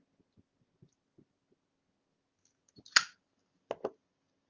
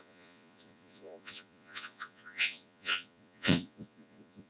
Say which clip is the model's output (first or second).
second